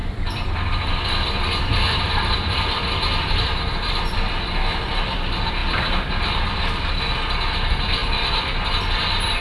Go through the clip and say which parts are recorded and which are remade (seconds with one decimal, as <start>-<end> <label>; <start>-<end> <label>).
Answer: 0.0-4.9 remade; 4.9-9.4 recorded